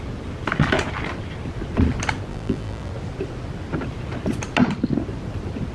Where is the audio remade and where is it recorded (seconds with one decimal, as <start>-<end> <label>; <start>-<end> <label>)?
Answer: 0.0-2.3 recorded; 2.3-2.9 remade; 2.9-5.7 recorded